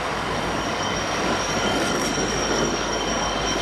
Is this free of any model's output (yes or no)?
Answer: no